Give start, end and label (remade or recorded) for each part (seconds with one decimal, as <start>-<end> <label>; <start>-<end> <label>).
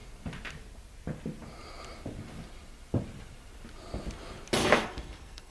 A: 0.0-4.6 recorded; 4.6-5.5 remade